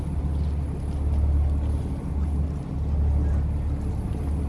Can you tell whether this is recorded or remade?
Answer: recorded